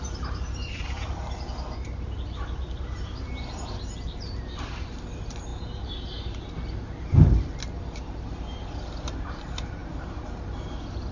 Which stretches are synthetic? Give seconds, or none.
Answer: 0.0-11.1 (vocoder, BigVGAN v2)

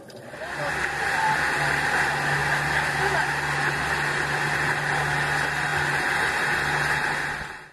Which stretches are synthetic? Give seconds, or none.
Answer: none

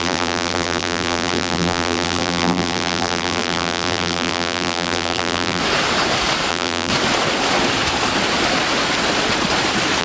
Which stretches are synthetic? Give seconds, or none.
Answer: 0.0-5.6 (vocoder, BigVGAN v2); 6.5-6.9

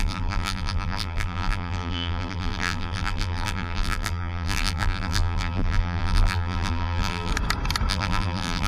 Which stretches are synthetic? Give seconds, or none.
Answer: 0.0-7.3 (vocoder, BigVGAN v2); 7.9-8.7

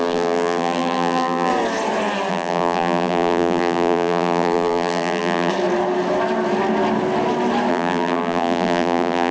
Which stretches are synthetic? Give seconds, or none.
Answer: 0.0-1.5 (vocoder, BigVGAN v2); 2.3-5.5; 7.7-9.3

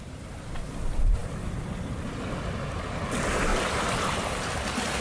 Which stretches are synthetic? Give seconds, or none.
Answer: none

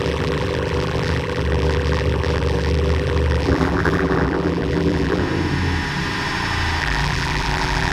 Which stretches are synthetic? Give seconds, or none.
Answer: 0.0-5.2 (vocoder, BigVGAN v2); 6.8-7.9

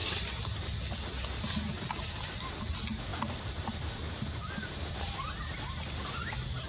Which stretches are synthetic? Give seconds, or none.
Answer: 3.1-5.3 (vocoder, BigVGAN v2)